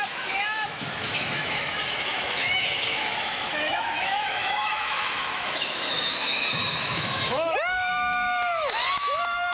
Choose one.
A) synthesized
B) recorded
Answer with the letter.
A